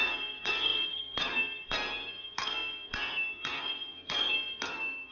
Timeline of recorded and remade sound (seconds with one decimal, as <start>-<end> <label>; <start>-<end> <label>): 0.0-5.1 remade

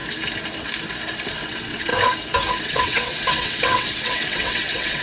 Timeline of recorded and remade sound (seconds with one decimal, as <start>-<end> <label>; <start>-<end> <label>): 0.0-1.3 recorded; 1.3-1.9 remade; 1.9-2.6 recorded; 2.6-5.0 remade

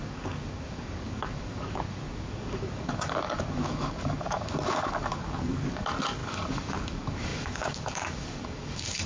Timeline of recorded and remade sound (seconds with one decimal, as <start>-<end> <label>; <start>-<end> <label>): 0.0-9.1 remade

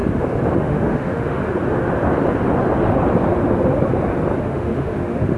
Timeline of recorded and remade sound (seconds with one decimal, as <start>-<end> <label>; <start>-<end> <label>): 0.0-0.6 recorded; 0.6-1.4 remade; 1.4-4.4 recorded; 4.4-5.4 remade

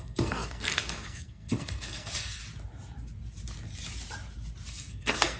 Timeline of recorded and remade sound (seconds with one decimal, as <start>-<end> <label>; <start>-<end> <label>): 0.0-2.4 remade; 2.4-4.7 recorded; 4.7-5.4 remade

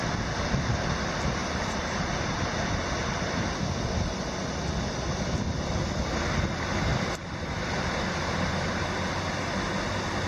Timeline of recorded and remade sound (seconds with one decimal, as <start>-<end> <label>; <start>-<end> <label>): 0.0-1.4 recorded; 1.4-2.5 remade; 2.5-6.9 recorded; 6.9-8.8 remade; 8.8-10.3 recorded